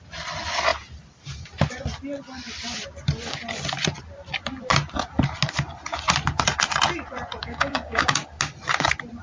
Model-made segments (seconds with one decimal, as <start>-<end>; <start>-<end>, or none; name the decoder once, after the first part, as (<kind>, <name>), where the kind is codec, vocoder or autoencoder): 7.4-8.3 (codec, DAC)

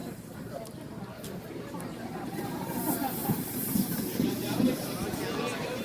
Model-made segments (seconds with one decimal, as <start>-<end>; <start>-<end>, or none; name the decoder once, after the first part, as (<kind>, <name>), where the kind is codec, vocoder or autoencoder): 0.0-2.8 (vocoder, BigVGAN v2); 3.2-4.3

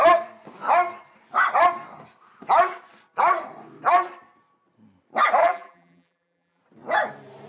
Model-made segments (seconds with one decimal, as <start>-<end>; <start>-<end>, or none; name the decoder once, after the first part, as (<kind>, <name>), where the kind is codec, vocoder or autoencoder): 5.4-6.6 (vocoder, BigVGAN v2)

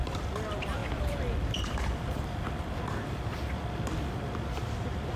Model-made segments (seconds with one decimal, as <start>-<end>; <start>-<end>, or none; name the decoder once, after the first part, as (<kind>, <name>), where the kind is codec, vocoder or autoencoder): none

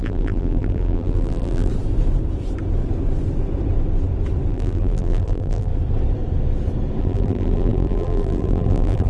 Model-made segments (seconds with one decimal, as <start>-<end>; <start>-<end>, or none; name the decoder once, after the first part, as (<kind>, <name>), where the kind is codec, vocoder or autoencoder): 0.0-1.7 (vocoder, BigVGAN v2); 4.5-5.7; 7.0-9.1

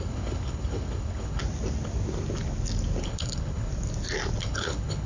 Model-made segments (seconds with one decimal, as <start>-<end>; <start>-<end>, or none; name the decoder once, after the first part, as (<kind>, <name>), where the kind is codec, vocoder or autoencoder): 0.0-1.4 (codec, HILCodec); 3.0-3.7; 4.4-5.1

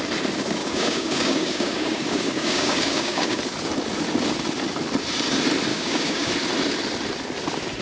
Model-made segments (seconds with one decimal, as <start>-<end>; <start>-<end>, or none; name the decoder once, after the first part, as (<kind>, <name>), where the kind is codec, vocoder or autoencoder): 0.6-3.4 (codec, DAC); 5.7-6.3

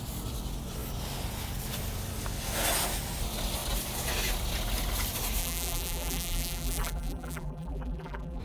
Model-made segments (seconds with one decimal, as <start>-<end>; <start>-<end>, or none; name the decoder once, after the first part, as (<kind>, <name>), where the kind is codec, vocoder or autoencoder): 5.4-8.4 (vocoder, BigVGAN v2)